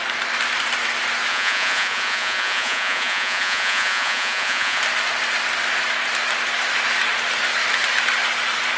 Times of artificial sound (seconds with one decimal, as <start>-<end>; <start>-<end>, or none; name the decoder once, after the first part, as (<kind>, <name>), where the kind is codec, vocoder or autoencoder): 1.3-4.8 (vocoder, Vocos)